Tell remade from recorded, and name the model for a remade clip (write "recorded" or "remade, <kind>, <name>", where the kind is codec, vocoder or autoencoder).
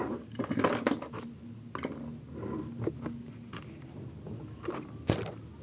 recorded